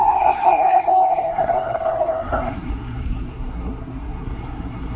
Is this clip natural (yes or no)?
no